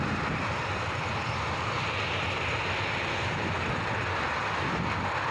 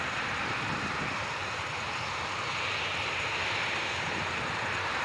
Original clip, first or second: first